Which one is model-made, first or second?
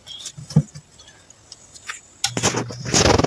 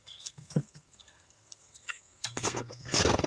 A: second